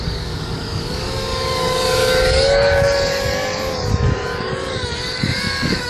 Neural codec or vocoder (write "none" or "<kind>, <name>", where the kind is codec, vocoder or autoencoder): codec, DAC